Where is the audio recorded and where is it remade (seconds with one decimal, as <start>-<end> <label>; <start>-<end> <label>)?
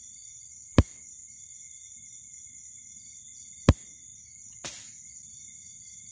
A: 0.0-6.1 recorded